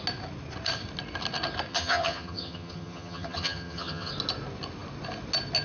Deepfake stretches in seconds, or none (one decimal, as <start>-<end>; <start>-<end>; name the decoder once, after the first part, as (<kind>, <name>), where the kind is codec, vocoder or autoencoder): 1.7-4.1 (vocoder, HiFi-GAN)